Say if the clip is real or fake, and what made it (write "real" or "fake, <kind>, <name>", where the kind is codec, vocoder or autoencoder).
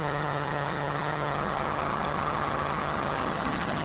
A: fake, vocoder, HiFi-GAN